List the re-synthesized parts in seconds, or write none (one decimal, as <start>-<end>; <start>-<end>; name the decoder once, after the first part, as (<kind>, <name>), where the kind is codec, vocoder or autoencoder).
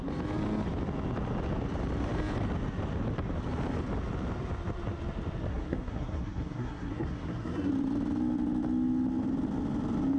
5.5-7.7 (codec, SNAC)